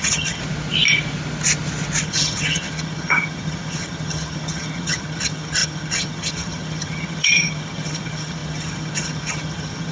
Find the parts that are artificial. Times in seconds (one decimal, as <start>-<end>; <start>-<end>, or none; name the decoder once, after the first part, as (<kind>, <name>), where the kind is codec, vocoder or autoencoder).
0.0-0.4 (vocoder, HiFi-GAN); 2.0-9.9